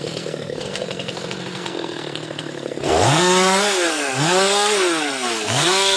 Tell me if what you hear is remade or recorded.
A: remade